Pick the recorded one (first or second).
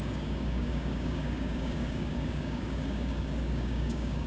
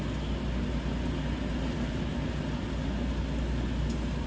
second